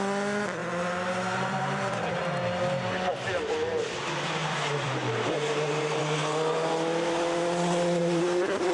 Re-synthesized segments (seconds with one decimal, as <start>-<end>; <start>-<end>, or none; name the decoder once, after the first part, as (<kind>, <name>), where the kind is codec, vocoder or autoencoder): 0.6-2.1 (vocoder, BigVGAN v2); 4.4-6.0; 8.0-8.7